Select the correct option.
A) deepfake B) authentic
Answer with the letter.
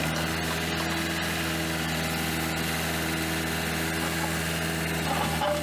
B